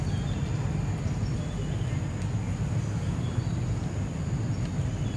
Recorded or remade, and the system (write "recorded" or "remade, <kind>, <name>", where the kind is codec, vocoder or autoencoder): recorded